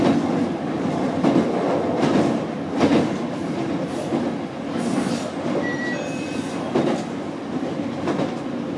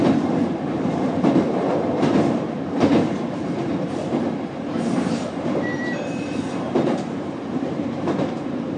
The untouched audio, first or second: first